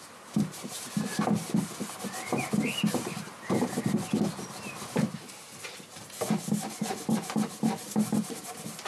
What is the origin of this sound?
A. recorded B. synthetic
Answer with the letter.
A